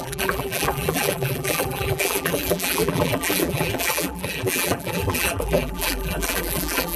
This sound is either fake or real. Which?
fake